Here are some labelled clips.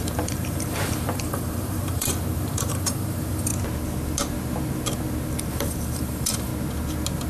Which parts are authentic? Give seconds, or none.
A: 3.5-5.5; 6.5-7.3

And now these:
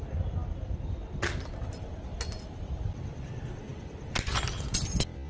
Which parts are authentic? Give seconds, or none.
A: 0.0-5.3